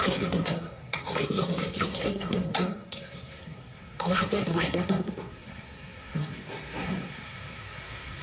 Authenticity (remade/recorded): remade